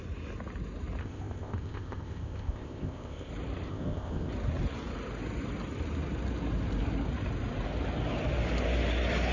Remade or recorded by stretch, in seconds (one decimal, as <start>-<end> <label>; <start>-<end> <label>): 0.0-1.0 recorded; 1.0-3.3 remade; 3.3-3.7 recorded; 3.7-4.3 remade; 4.3-9.3 recorded

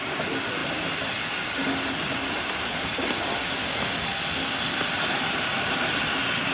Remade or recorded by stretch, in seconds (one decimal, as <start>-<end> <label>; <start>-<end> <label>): 0.0-6.5 recorded

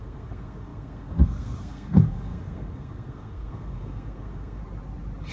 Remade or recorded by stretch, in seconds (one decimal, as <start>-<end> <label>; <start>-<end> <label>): 0.0-4.6 remade; 4.6-5.3 recorded

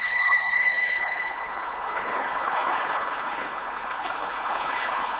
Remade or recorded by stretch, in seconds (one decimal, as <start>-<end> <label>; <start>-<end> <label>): 0.0-5.2 remade